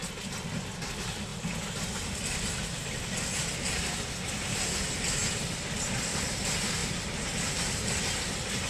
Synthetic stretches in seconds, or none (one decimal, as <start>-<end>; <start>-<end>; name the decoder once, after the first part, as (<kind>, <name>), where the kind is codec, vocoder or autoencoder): 6.8-8.0 (vocoder, BigVGAN v2)